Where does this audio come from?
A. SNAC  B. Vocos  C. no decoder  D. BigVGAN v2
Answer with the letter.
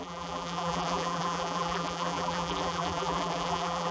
D